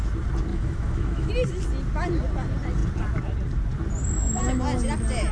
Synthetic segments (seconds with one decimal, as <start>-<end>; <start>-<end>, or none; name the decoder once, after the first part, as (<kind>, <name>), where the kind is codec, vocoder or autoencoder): 0.5-1.3 (autoencoder, DAC-VAE)